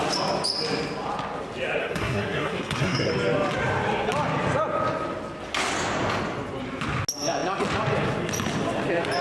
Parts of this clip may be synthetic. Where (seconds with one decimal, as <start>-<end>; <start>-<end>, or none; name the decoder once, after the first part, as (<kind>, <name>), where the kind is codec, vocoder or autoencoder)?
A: 1.8-3.1 (codec, SNAC)